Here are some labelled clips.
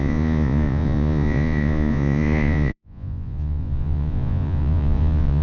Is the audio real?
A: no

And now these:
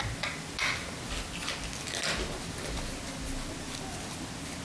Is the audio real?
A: yes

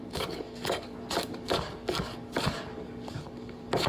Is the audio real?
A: no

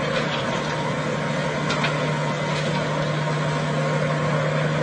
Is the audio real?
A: yes